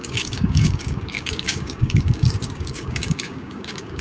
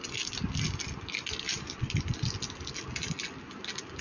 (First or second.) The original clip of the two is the second